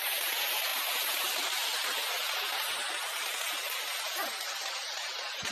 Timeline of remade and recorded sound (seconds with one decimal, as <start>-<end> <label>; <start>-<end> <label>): 0.0-5.5 recorded